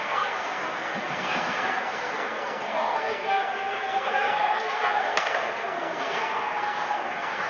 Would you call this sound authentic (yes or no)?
no